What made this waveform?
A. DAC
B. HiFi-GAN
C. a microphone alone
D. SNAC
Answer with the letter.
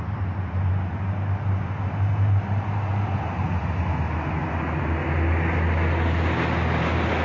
C